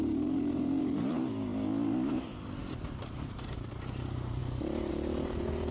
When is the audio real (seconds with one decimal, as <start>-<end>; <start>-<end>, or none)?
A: 1.5-2.1; 4.4-4.9